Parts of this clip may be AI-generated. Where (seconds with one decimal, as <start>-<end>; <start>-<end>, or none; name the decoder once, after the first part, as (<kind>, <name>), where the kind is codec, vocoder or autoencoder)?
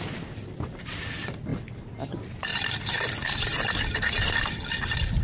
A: none